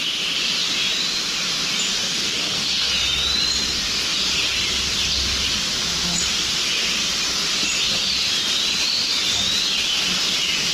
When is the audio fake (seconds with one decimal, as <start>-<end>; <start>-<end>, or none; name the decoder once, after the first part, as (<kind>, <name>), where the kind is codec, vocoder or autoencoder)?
2.0-2.9 (codec, SNAC)